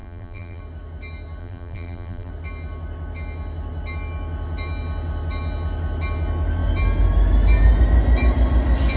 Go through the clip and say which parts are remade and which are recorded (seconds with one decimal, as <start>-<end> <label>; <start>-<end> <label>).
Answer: 0.0-0.6 remade; 0.6-1.4 recorded; 1.4-2.3 remade; 2.3-9.0 recorded